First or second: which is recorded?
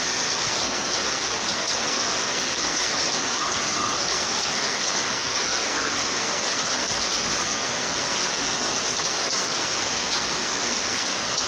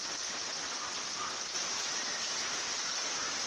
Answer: second